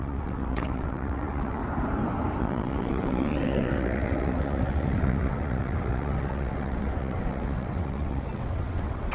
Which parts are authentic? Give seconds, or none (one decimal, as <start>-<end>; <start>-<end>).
1.6-2.4